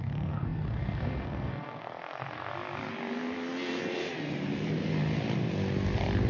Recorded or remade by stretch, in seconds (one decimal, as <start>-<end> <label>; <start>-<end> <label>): 0.0-2.5 remade; 2.5-6.3 recorded